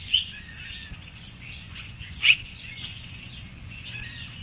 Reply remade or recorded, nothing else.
remade